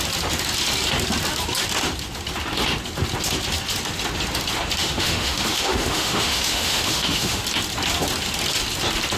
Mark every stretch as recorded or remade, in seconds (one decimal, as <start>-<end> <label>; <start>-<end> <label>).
0.0-4.8 recorded; 4.8-7.4 remade; 7.4-9.2 recorded